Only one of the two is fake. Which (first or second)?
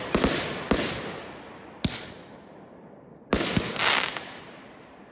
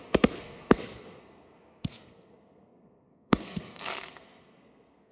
second